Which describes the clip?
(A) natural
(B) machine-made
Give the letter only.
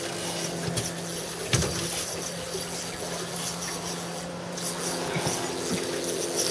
A